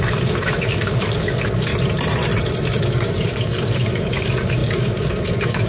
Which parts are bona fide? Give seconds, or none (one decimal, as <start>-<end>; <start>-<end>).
1.7-2.8